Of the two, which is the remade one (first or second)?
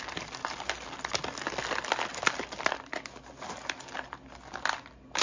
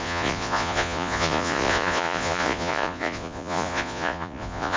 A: second